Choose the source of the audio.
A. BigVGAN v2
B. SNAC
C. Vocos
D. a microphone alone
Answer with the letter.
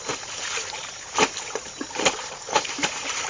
A